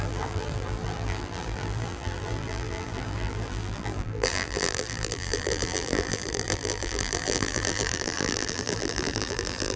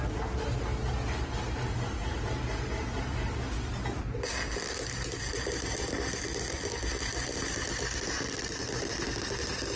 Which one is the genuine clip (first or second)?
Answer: second